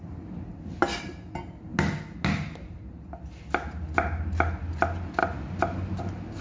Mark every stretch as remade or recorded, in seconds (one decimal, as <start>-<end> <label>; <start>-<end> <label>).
0.0-6.4 recorded